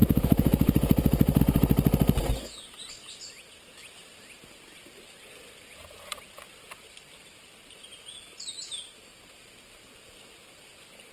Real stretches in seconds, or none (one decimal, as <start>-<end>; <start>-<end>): 1.4-11.1